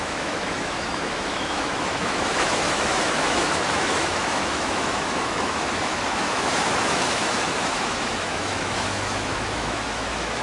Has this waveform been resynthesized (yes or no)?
yes